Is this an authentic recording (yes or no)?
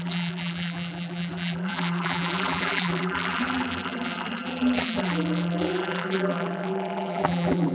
no